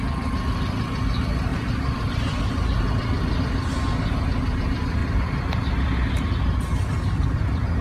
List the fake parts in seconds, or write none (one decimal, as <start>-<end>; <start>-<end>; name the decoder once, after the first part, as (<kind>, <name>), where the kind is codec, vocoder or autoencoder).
1.5-3.4 (vocoder, BigVGAN v2)